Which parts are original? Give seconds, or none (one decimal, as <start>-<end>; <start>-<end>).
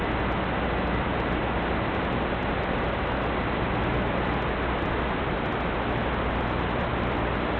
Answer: 0.0-7.6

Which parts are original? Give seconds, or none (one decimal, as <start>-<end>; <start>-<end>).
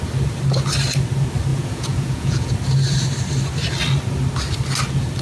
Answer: 0.0-1.5; 2.5-5.2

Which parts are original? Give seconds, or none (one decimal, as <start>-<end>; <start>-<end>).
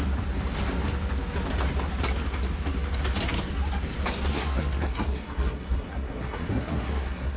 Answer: 0.0-4.3